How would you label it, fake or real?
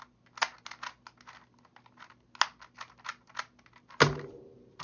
real